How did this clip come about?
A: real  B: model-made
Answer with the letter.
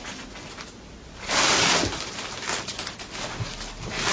A